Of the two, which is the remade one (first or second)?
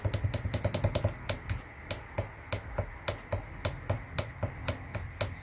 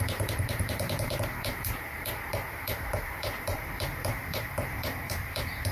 second